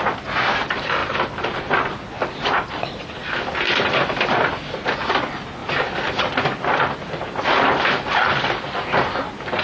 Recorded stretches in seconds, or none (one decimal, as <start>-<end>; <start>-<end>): 0.0-9.6